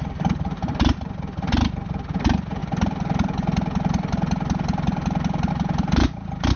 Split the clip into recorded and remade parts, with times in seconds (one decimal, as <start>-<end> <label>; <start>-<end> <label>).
0.0-6.6 recorded